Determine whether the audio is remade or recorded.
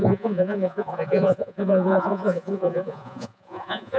remade